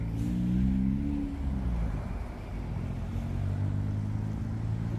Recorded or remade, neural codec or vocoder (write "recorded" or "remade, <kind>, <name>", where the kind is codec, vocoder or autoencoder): recorded